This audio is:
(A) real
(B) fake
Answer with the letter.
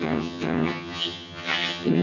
B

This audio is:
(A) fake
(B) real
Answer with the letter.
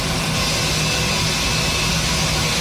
B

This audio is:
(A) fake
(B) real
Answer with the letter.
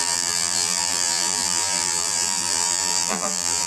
A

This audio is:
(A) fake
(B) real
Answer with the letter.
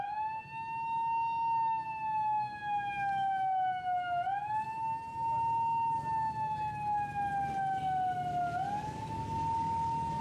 B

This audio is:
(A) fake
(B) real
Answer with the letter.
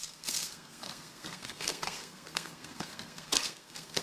A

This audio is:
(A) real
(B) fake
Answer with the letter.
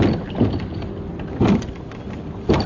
A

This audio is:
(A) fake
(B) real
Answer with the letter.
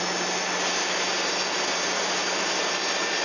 B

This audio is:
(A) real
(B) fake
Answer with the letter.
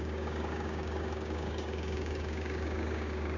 B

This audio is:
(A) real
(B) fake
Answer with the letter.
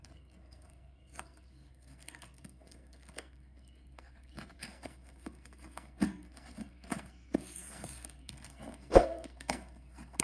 B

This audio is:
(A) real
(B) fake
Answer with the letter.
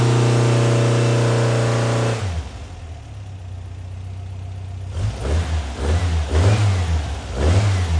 A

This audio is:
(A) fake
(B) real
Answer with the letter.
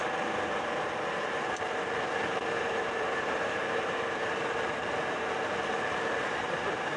A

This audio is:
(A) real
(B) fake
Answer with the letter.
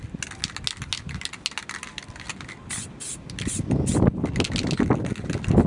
A